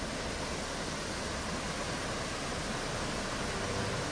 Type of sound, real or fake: real